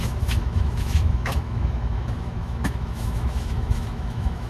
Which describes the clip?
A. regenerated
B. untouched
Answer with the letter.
A